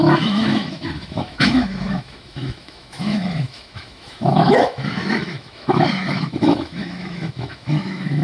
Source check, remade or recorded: remade